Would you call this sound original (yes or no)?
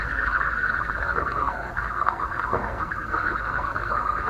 no